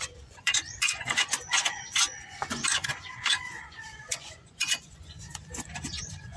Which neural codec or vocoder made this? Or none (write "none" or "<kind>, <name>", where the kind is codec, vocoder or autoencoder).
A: vocoder, Vocos